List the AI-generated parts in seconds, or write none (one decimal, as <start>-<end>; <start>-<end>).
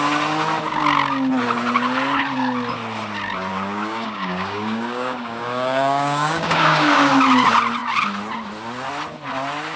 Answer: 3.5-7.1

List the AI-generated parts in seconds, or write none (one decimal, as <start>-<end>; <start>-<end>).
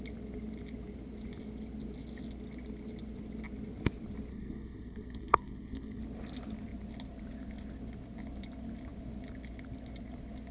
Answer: 4.3-6.0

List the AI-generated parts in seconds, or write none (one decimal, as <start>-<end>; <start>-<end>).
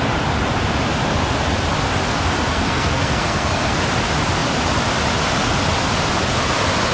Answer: 2.5-3.8